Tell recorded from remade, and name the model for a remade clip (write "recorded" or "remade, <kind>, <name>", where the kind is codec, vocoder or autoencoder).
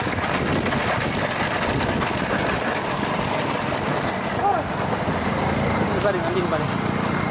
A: recorded